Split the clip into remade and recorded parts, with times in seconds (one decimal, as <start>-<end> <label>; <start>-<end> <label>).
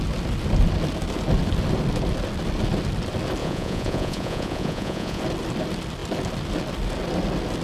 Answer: 0.0-3.4 recorded; 3.4-5.2 remade; 5.2-7.6 recorded